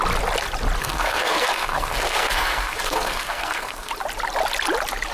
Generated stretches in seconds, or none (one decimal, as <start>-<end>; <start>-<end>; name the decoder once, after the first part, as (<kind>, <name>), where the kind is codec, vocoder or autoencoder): 0.8-3.9 (codec, SNAC)